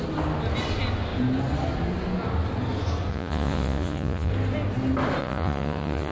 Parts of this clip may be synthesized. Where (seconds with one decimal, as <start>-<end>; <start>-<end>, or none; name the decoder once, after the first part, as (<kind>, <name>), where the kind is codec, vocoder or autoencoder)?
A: 3.1-4.3 (vocoder, Vocos); 5.2-6.1

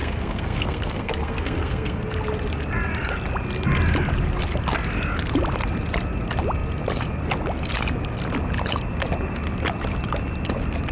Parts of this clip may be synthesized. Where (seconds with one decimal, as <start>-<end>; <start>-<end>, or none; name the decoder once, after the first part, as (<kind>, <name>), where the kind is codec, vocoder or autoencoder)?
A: 0.0-2.0 (codec, SNAC)

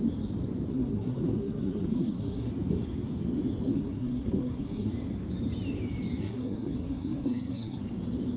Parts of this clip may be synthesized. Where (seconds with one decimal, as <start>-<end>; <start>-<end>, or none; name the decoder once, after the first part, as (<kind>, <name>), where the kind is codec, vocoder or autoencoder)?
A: 0.7-2.5 (codec, SNAC); 3.7-4.9; 6.2-7.8

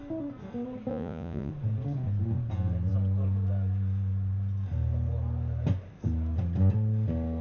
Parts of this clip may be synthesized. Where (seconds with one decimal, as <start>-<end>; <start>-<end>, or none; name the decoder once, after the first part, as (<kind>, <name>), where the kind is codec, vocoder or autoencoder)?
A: 0.9-1.5 (vocoder, Vocos)